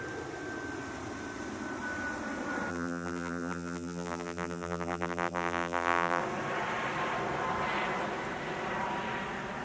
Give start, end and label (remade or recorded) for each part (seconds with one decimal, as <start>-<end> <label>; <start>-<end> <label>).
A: 0.0-2.7 recorded; 2.7-6.2 remade; 6.2-9.6 recorded